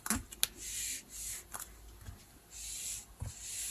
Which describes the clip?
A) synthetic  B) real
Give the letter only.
B